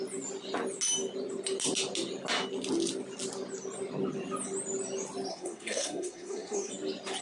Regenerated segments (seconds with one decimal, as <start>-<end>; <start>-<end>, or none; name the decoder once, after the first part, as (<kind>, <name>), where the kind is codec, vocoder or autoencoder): 5.3-6.7 (codec, SNAC)